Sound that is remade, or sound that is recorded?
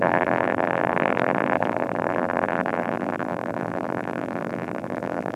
remade